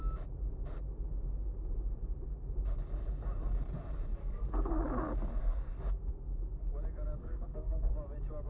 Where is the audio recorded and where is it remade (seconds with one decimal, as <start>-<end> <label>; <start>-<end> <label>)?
0.0-4.2 recorded; 4.2-4.7 remade; 4.7-5.4 recorded; 5.4-6.1 remade; 6.1-7.2 recorded; 7.2-7.9 remade; 7.9-8.5 recorded